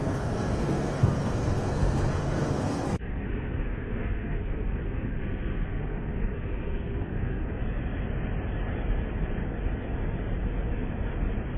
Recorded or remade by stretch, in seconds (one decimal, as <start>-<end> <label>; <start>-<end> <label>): 0.0-7.6 remade; 7.6-11.6 recorded

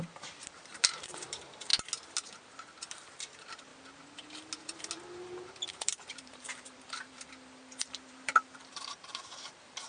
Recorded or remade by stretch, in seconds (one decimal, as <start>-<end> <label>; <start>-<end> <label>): 0.0-1.7 remade; 1.7-2.9 recorded; 2.9-3.7 remade; 3.7-5.7 recorded; 5.7-9.9 remade

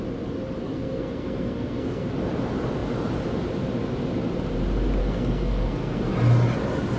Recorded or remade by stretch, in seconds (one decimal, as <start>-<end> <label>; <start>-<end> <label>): 0.0-0.6 recorded; 0.6-2.1 remade; 2.1-5.0 recorded; 5.0-6.1 remade; 6.1-7.0 recorded